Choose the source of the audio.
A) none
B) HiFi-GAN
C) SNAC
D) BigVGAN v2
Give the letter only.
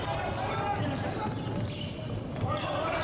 A